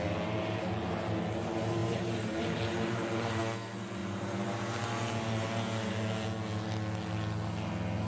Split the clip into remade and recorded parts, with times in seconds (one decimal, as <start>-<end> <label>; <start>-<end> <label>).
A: 0.0-1.8 recorded; 1.8-3.4 remade; 3.4-4.0 recorded; 4.0-5.5 remade; 5.5-8.1 recorded